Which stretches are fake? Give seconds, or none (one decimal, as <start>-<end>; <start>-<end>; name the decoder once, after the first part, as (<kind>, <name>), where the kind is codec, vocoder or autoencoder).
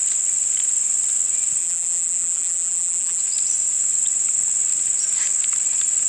1.6-3.2 (vocoder, BigVGAN v2)